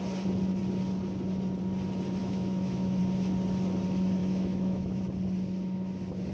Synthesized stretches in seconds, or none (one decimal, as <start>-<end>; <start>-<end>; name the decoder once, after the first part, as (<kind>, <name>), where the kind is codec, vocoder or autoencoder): 2.2-3.0 (autoencoder, DAC-VAE); 4.2-5.0